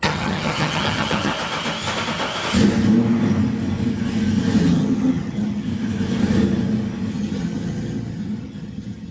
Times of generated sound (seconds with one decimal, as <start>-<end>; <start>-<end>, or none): 0.0-1.3; 4.6-5.7; 7.1-9.1